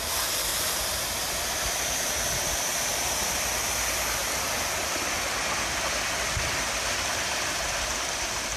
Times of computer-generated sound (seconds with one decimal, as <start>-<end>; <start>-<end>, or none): none